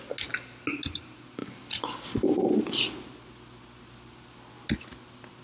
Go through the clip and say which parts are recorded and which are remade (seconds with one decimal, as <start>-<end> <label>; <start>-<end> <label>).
0.0-5.4 recorded

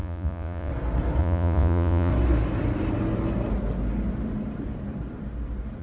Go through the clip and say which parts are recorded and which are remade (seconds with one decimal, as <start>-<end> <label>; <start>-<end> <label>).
0.0-0.7 remade; 0.7-1.2 recorded; 1.2-2.1 remade; 2.1-5.8 recorded